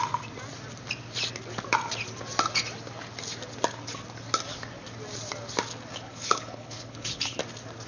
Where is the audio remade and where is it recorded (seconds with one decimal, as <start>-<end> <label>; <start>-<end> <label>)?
0.0-5.9 recorded; 5.9-7.4 remade; 7.4-7.9 recorded